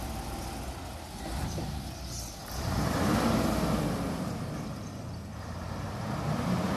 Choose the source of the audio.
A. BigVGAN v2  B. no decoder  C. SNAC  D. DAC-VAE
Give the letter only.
B